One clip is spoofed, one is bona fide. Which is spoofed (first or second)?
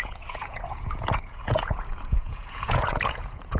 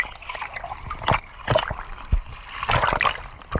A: first